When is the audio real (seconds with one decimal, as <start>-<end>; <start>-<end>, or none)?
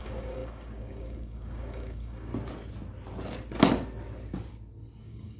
2.3-5.0